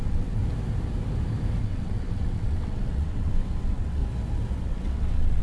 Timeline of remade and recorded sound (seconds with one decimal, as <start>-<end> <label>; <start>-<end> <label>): 0.0-0.4 remade; 0.4-1.6 recorded; 1.6-4.0 remade; 4.0-4.6 recorded; 4.6-5.4 remade